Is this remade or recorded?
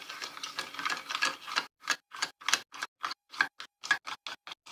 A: recorded